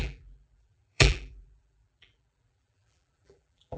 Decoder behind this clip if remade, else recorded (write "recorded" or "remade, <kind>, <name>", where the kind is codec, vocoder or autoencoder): remade, vocoder, BigVGAN v2